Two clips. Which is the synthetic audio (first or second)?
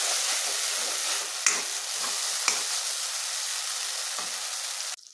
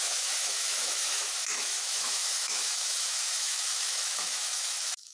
second